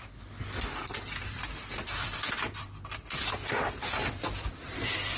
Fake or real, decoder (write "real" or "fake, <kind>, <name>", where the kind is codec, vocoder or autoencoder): real